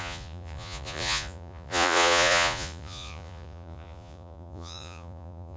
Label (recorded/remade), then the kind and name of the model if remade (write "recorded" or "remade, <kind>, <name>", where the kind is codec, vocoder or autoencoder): remade, vocoder, Vocos